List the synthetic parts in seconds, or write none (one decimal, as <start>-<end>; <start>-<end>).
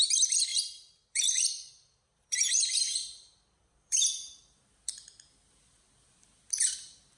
0.5-4.6